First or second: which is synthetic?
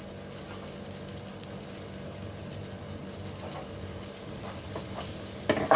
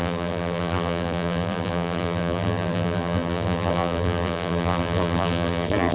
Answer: second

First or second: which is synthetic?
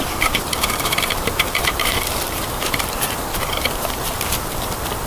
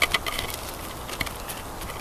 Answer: first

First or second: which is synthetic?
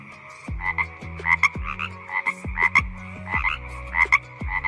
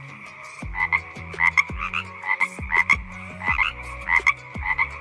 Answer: second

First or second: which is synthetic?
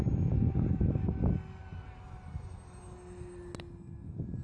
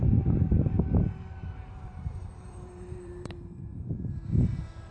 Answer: second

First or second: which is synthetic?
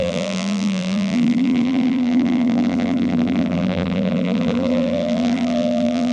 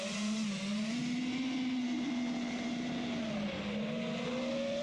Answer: first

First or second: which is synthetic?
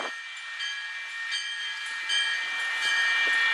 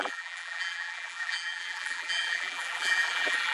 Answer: second